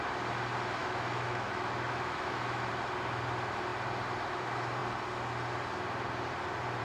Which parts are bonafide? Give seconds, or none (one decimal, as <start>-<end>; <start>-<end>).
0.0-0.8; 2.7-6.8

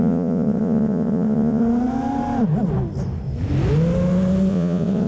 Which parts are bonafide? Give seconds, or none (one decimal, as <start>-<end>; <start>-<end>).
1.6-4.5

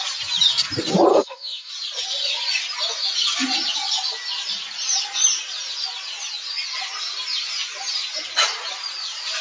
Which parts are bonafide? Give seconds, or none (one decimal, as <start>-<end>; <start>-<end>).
0.0-1.1; 1.7-9.4